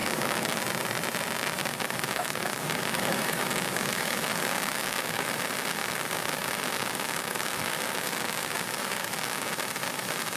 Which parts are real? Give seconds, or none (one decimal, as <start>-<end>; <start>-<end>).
0.6-1.6; 5.3-5.8; 9.5-10.4